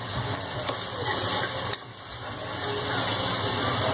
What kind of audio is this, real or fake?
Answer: real